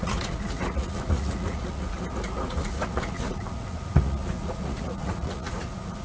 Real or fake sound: fake